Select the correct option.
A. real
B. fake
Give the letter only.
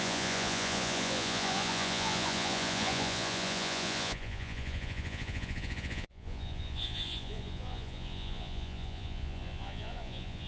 B